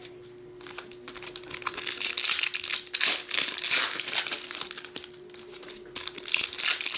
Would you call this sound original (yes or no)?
yes